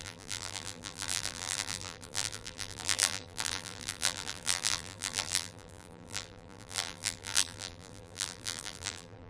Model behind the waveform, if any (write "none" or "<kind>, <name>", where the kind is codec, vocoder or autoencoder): vocoder, BigVGAN v2